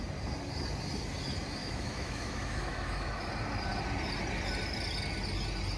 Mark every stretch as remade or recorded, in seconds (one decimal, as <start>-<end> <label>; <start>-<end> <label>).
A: 0.0-1.6 recorded; 1.6-3.3 remade; 3.3-5.8 recorded